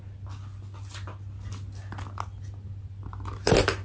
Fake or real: real